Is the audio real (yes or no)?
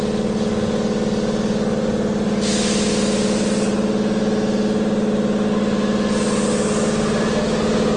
yes